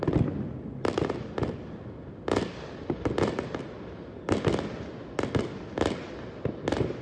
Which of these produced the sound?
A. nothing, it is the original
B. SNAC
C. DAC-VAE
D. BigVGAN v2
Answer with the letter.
A